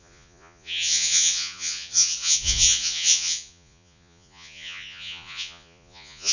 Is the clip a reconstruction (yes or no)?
yes